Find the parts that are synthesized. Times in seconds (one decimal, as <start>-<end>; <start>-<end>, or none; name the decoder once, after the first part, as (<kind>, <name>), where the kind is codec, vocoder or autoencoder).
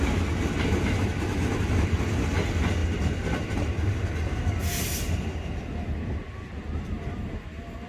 none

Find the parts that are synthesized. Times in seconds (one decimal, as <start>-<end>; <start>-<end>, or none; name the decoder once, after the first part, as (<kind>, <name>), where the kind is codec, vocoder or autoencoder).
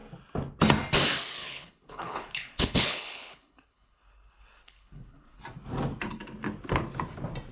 1.4-5.4 (codec, HILCodec)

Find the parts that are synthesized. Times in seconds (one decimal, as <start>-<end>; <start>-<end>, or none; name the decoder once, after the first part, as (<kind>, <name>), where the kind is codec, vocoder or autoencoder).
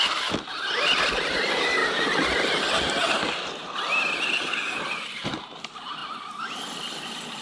none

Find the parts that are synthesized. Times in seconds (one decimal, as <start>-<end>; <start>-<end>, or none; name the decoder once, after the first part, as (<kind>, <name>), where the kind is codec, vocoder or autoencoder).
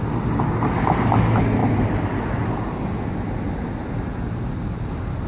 none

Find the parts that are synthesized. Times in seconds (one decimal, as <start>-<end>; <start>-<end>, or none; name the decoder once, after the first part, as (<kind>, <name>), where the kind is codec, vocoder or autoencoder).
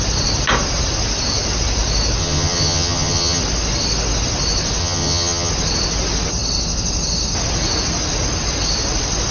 2.2-3.4 (vocoder, HiFi-GAN); 4.8-5.5